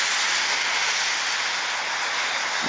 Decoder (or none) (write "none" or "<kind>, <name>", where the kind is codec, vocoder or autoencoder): none